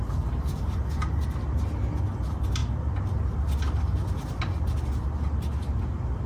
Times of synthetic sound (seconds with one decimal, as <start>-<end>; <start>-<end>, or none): none